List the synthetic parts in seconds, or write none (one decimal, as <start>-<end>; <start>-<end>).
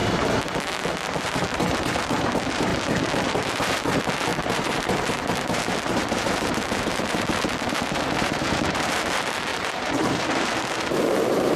1.2-2.7; 3.3-11.6